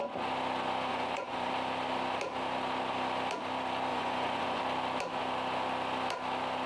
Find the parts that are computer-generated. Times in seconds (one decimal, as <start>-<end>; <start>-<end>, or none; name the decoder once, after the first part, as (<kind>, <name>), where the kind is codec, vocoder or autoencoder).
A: 0.9-1.5 (vocoder, Vocos); 3.9-4.6